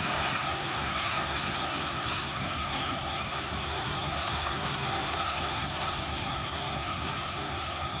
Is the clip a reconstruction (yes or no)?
yes